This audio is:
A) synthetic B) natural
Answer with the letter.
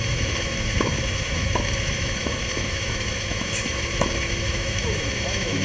A